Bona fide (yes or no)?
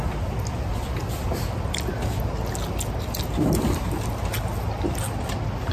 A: yes